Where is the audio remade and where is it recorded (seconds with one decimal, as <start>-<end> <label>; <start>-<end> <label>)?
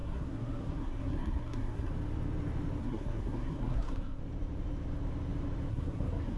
0.0-1.9 remade; 1.9-2.8 recorded; 2.8-4.2 remade; 4.2-5.7 recorded; 5.7-6.4 remade